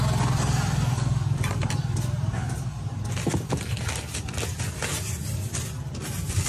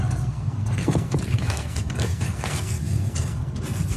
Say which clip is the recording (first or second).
first